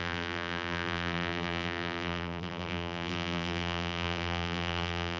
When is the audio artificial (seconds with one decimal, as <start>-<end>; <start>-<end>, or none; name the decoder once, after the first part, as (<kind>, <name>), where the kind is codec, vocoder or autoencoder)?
0.0-5.2 (vocoder, BigVGAN v2)